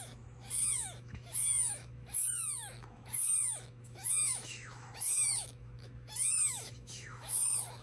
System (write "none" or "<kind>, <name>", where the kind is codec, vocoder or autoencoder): autoencoder, DAC-VAE